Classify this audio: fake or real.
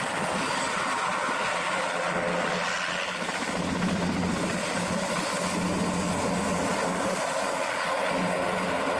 real